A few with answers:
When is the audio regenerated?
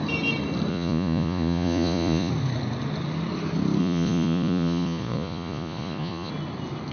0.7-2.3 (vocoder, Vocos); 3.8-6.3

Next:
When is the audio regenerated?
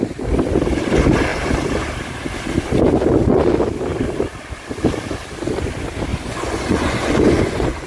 6.1-7.9 (vocoder, Vocos)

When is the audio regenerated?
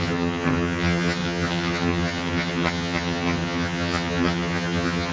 0.0-5.1 (vocoder, HiFi-GAN)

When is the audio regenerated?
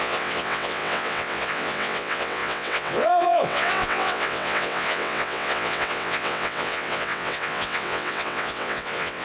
0.0-9.2 (vocoder, WaveNeXt)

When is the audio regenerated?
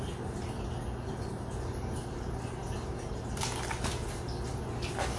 none